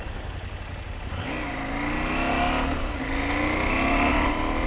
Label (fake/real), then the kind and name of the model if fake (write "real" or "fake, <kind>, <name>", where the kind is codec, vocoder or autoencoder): real